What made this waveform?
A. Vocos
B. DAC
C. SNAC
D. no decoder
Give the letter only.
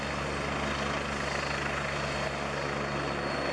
D